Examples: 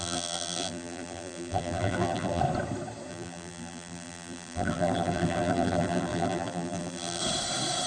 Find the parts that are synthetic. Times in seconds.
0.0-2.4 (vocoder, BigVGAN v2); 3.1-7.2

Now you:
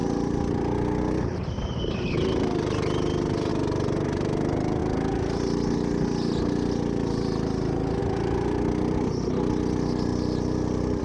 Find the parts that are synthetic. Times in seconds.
10.1-11.0 (vocoder, BigVGAN v2)

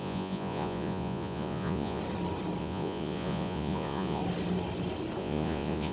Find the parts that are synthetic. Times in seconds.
0.0-2.0 (vocoder, Vocos); 2.6-4.2; 5.2-5.9